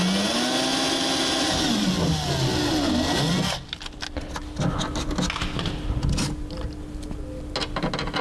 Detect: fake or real real